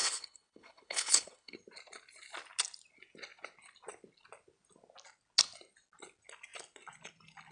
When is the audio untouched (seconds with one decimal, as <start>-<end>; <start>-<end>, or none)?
1.6-7.5